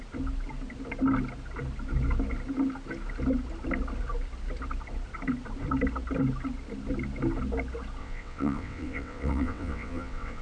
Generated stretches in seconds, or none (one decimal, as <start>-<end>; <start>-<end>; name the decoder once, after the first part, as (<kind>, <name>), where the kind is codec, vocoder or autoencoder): 8.0-10.4 (vocoder, WaveNeXt)